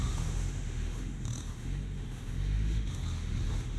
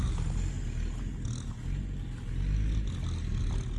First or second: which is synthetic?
first